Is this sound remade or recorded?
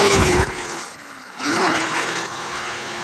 remade